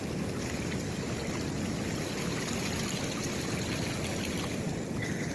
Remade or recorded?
recorded